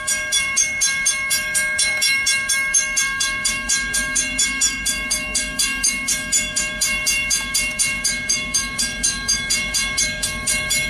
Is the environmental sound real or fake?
fake